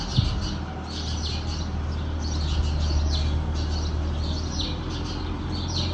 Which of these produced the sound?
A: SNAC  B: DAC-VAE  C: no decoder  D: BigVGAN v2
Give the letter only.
C